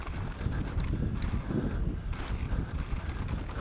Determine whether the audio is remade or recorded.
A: recorded